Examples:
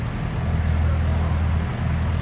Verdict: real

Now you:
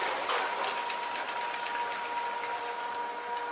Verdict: real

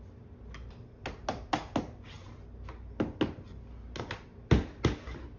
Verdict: real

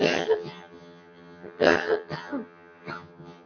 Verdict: fake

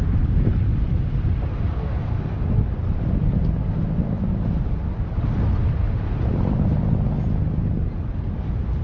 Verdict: real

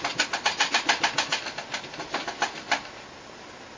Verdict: real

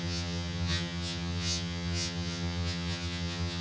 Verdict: fake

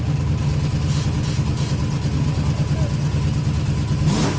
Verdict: real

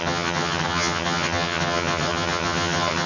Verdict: fake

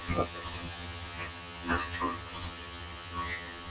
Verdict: fake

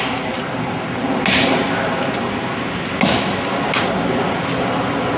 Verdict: real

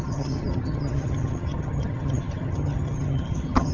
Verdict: fake